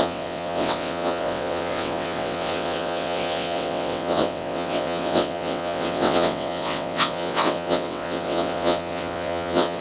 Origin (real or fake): fake